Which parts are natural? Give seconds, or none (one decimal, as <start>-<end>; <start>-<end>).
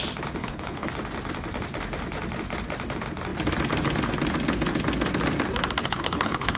0.0-0.4; 0.9-5.8